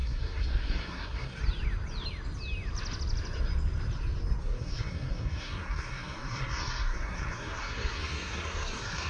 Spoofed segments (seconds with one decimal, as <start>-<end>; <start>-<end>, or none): 0.0-1.4; 4.4-9.1